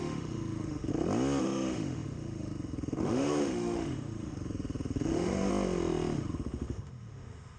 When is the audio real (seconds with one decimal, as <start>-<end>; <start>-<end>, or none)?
0.9-1.4; 5.5-6.2

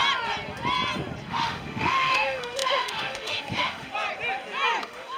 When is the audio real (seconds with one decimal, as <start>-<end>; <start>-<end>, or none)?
0.0-1.3; 3.9-4.8

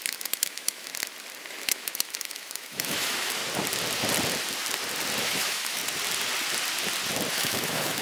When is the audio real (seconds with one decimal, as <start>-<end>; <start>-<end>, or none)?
0.9-1.5; 3.4-5.2; 5.8-7.3

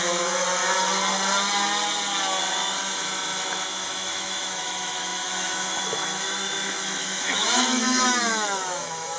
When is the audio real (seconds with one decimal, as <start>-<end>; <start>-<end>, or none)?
0.6-2.4